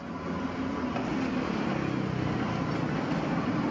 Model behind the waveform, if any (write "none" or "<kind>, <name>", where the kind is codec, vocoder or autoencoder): none